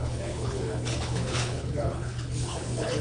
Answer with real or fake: fake